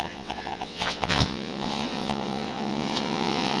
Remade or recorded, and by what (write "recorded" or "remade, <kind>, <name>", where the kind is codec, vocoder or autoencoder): remade, vocoder, WaveNeXt